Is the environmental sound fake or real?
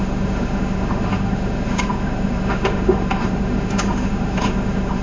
fake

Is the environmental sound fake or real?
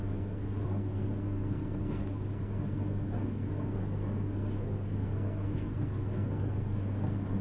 fake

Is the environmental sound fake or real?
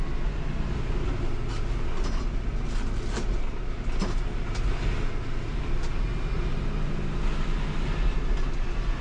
real